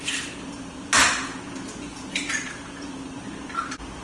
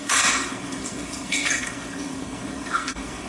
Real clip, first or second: first